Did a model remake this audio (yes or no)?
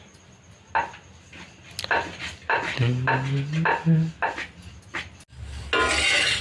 no